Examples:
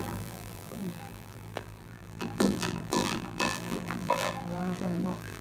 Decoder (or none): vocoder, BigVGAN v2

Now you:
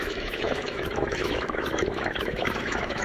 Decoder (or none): autoencoder, DAC-VAE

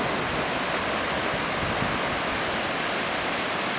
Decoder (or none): none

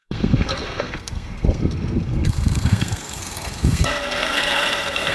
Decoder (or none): codec, SNAC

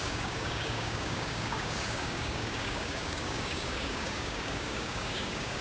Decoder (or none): codec, DAC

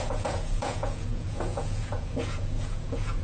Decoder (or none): vocoder, Vocos